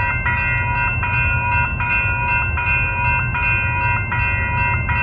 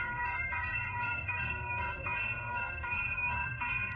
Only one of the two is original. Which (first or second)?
first